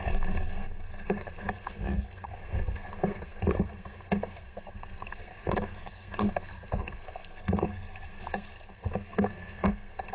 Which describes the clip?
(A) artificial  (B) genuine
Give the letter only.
A